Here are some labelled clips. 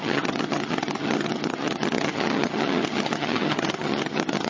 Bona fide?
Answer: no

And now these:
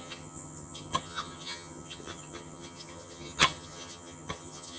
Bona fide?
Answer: no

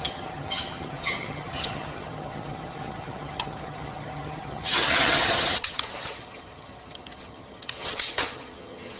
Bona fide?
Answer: no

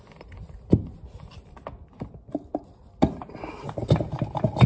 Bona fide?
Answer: yes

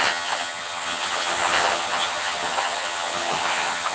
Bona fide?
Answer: no